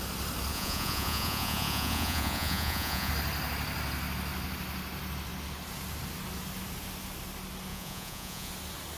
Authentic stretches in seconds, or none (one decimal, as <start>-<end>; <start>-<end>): 0.0-0.5; 3.1-7.7; 8.5-9.0